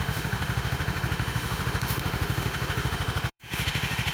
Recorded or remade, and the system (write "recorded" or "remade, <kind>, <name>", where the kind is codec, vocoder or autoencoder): remade, autoencoder, DAC-VAE